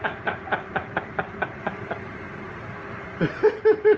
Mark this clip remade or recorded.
remade